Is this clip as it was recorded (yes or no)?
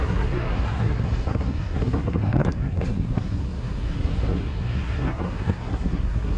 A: no